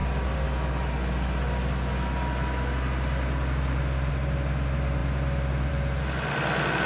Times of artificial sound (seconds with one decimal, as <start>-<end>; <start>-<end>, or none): none